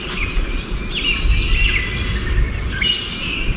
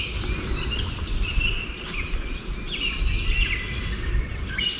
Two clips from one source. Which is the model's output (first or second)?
second